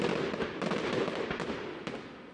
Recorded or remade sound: recorded